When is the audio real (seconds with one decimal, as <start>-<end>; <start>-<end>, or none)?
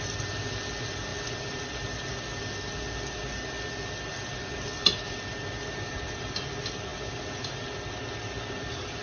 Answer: 0.0-9.0